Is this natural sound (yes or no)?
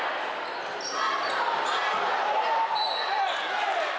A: yes